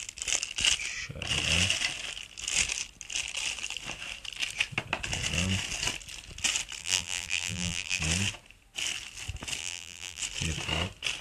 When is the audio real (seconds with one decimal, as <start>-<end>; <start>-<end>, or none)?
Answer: 0.0-6.8; 8.0-9.6; 10.2-11.2